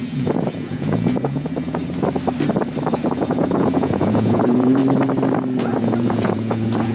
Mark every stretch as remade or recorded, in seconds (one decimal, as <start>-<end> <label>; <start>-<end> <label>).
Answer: 0.0-1.8 remade; 1.8-2.9 recorded; 2.9-4.8 remade; 4.8-5.6 recorded; 5.6-6.9 remade